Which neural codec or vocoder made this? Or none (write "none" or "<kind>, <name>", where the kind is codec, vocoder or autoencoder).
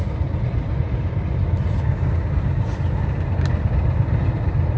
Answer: none